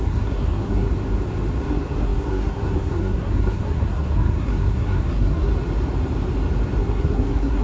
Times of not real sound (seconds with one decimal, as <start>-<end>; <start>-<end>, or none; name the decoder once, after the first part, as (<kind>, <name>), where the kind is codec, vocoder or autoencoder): 0.0-0.9 (codec, SNAC); 1.6-5.5; 6.8-7.6